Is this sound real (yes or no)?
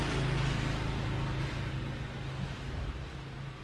yes